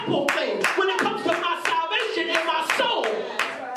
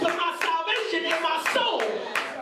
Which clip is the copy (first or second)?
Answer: second